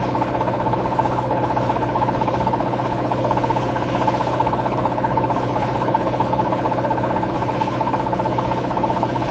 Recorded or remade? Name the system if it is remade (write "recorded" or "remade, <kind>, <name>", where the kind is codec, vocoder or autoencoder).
remade, codec, HILCodec